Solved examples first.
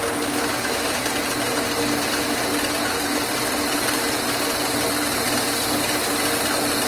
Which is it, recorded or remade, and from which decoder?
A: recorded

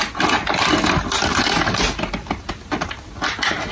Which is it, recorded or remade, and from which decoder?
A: recorded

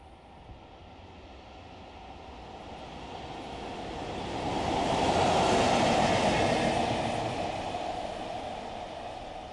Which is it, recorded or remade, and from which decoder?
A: recorded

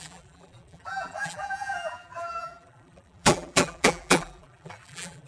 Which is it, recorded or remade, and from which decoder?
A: remade, vocoder, BigVGAN v2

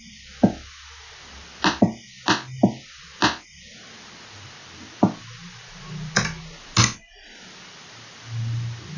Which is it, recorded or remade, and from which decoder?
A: recorded